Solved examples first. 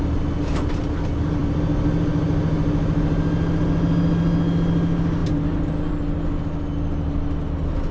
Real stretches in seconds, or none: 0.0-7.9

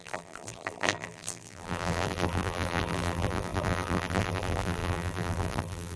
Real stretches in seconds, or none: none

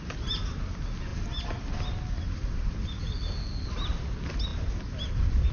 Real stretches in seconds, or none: 0.0-5.5

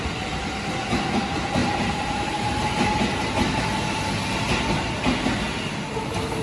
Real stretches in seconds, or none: 0.0-1.6; 3.6-6.4

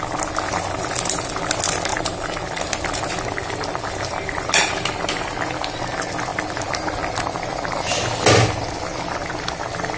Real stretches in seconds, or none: 0.0-1.9; 5.3-10.0

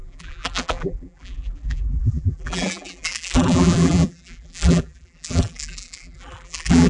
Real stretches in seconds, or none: none

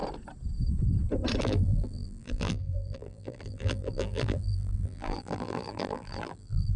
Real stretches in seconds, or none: 0.0-1.4

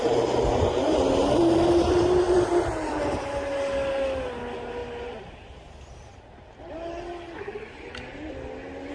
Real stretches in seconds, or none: 0.0-0.5; 2.5-4.8; 6.7-8.9